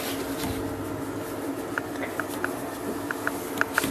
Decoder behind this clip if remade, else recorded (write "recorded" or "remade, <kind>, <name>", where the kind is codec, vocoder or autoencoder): recorded